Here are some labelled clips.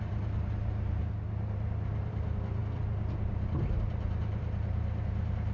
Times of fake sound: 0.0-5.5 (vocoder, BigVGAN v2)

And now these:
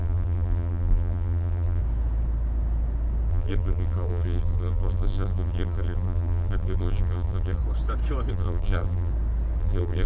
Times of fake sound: 0.0-1.8 (vocoder, BigVGAN v2); 3.3-7.6; 8.3-9.1; 9.6-10.1

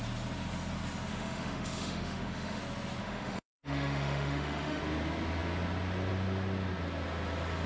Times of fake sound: 1.1-2.6 (autoencoder, DAC-VAE); 3.0-4.8

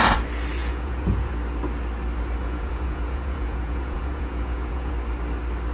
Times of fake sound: 0.6-1.3 (vocoder, Vocos); 2.4-4.9

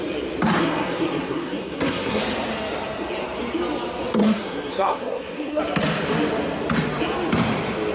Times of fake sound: 0.6-2.2 (codec, SNAC); 4.2-5.6

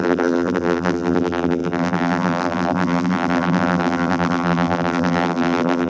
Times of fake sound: 0.0-5.9 (vocoder, BigVGAN v2)